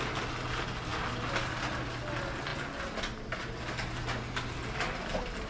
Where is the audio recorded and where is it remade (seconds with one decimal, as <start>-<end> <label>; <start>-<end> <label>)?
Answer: 0.0-5.5 recorded